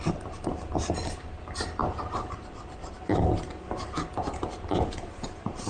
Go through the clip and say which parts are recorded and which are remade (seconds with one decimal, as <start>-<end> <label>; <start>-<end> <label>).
0.0-5.7 recorded

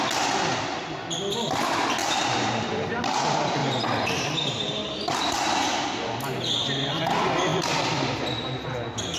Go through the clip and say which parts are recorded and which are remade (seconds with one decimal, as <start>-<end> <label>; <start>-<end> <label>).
0.0-2.0 recorded; 2.0-3.0 remade; 3.0-3.6 recorded; 3.6-5.2 remade; 5.2-9.2 recorded

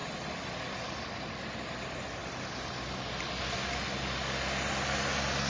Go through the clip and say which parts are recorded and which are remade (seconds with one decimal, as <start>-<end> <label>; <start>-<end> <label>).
0.0-5.5 recorded